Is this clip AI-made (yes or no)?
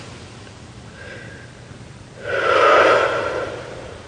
no